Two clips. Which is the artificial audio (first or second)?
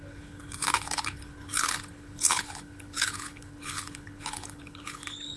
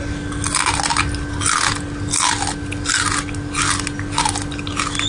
first